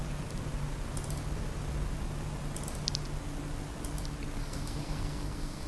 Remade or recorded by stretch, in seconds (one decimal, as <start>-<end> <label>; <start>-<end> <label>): 0.0-4.4 recorded; 4.4-5.7 remade